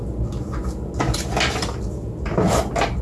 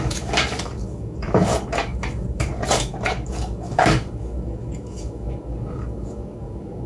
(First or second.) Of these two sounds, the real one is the first